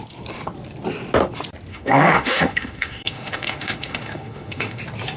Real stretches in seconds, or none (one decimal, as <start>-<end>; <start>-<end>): 0.0-1.7; 4.8-5.2